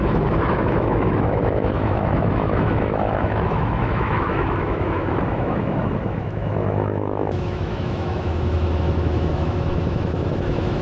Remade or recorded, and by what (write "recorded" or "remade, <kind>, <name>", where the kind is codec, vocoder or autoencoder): remade, autoencoder, DAC-VAE